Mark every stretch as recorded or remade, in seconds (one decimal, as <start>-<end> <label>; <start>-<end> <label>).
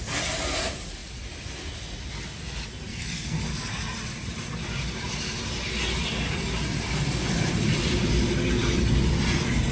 0.0-2.9 recorded; 2.9-3.4 remade; 3.4-9.7 recorded